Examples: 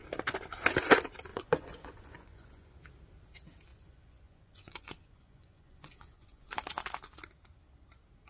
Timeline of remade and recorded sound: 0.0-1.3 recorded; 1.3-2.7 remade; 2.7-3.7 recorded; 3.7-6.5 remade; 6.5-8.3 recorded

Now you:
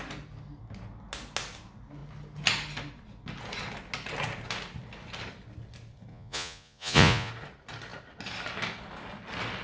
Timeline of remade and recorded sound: 0.0-6.1 recorded; 6.1-7.3 remade; 7.3-9.6 recorded

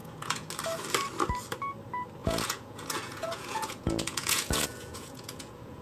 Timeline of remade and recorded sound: 0.0-0.5 remade; 0.5-2.2 recorded; 2.2-5.8 remade